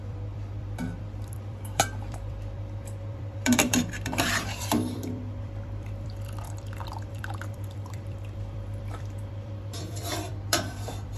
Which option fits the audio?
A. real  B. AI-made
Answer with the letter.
B